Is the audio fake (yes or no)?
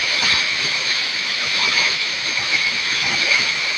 yes